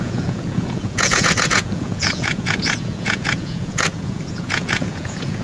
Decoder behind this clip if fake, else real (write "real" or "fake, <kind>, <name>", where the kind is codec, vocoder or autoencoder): fake, vocoder, Vocos